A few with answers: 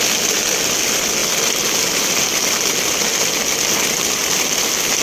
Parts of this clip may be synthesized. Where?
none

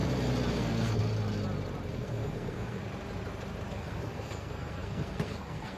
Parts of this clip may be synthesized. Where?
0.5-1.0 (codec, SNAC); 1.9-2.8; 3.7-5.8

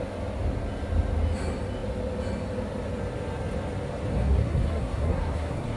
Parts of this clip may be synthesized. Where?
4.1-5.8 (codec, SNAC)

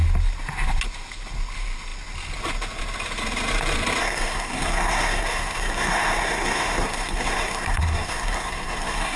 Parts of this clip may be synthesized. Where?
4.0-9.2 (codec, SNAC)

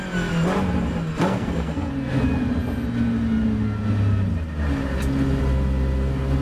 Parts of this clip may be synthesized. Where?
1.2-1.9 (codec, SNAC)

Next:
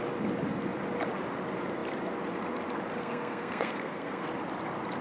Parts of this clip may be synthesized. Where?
3.0-4.3 (codec, SNAC)

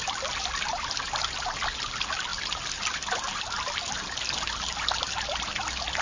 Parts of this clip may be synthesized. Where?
none

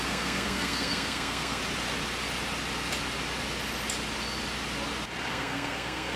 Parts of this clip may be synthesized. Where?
0.0-1.6 (codec, SNAC); 5.3-6.2